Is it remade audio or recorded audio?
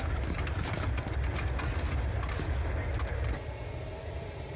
recorded